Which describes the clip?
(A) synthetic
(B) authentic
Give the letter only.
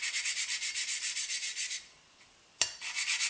B